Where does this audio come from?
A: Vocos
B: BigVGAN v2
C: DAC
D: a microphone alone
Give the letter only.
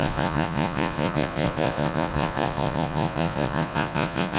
A